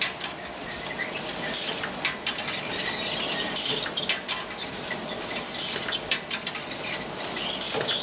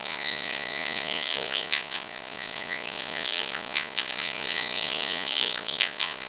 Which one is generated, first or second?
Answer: second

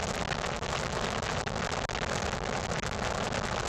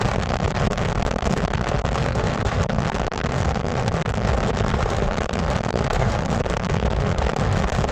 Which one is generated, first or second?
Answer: second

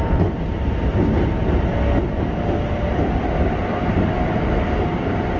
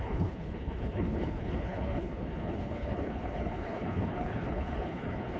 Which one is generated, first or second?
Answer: second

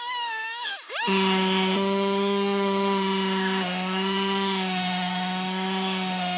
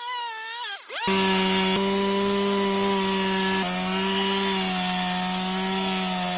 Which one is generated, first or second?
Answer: first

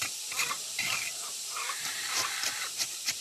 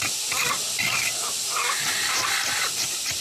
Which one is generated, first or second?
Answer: first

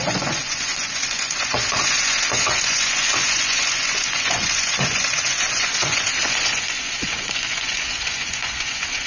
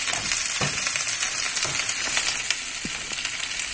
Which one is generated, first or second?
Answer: first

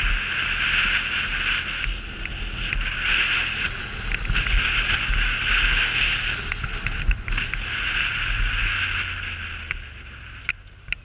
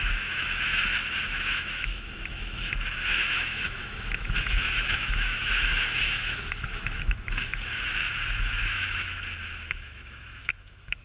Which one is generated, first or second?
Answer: second